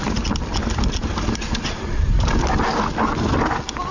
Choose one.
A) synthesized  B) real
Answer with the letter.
B